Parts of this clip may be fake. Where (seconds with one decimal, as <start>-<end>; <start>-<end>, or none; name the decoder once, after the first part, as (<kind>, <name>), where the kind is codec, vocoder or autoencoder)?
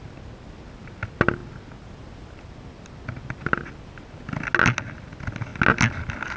none